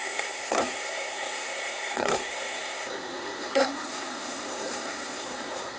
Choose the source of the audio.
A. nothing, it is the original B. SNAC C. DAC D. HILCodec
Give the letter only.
B